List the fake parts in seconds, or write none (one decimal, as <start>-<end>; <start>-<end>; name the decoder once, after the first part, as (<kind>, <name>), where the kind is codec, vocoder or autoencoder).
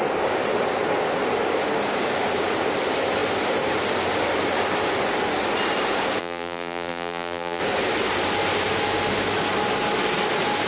6.2-7.6 (vocoder, BigVGAN v2)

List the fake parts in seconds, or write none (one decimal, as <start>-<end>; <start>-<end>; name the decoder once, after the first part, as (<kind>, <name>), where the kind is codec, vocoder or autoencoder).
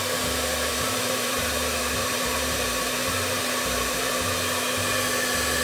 0.7-4.1 (vocoder, BigVGAN v2)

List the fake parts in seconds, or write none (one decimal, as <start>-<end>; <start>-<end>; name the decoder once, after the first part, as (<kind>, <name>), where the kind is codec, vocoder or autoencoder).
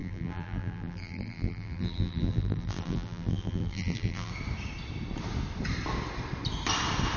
0.0-4.3 (vocoder, BigVGAN v2)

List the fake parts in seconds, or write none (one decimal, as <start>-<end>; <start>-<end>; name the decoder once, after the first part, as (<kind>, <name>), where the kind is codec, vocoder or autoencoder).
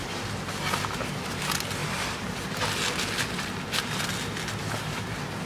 none